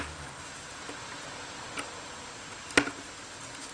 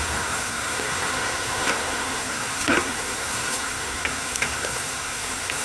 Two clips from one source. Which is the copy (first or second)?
second